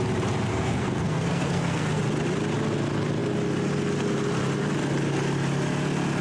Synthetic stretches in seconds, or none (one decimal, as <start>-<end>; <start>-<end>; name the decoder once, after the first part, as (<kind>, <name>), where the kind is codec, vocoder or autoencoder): 0.5-2.0 (codec, SNAC)